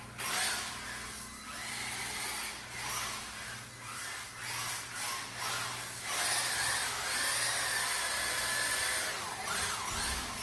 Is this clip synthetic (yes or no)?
no